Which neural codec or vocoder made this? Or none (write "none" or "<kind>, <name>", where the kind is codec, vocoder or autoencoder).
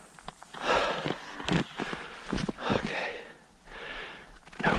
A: none